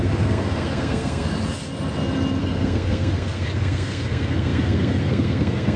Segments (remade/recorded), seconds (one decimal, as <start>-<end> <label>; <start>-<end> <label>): 0.0-1.3 remade; 1.3-2.4 recorded; 2.4-5.8 remade